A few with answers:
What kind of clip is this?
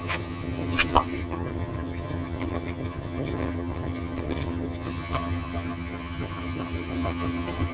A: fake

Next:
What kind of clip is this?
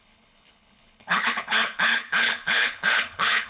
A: fake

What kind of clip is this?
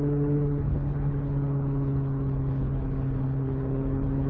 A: fake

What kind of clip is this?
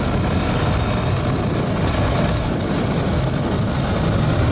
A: real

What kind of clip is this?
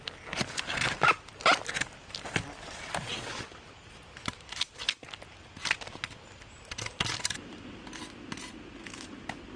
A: real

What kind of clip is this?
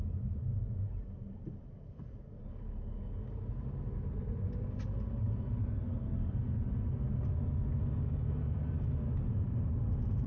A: real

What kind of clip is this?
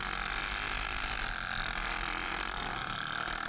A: real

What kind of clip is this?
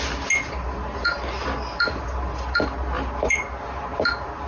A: real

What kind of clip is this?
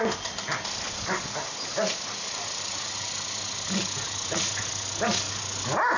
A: real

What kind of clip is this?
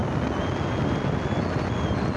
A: real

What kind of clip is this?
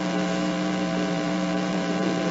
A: fake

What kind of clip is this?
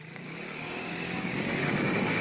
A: fake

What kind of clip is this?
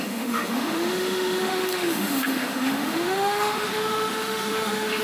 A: fake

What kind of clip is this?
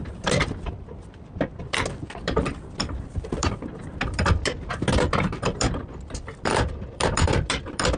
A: fake